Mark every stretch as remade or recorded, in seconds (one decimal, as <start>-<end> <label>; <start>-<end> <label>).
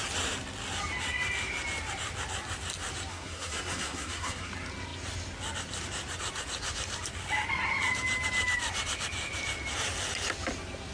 0.0-3.1 recorded; 3.1-4.5 remade; 4.5-10.9 recorded